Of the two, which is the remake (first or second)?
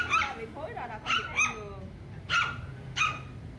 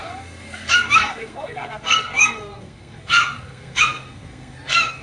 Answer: second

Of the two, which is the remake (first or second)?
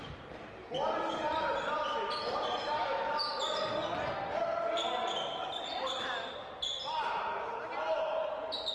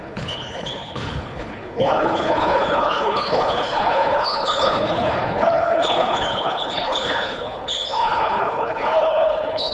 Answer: second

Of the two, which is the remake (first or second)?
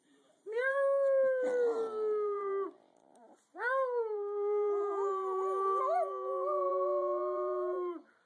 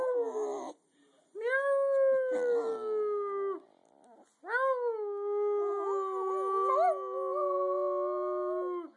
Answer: first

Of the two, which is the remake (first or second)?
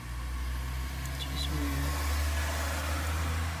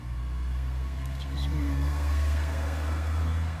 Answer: second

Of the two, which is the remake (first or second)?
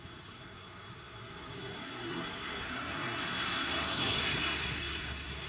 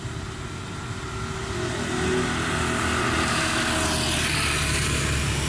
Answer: first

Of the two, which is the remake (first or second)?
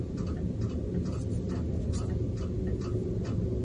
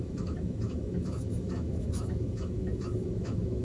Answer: second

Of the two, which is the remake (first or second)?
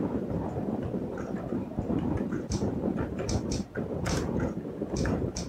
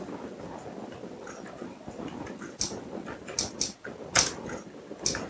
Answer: first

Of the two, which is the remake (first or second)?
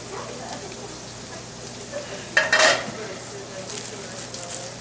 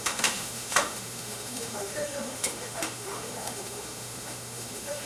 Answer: second